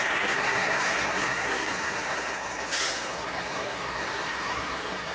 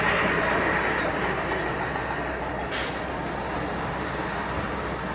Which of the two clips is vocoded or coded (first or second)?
first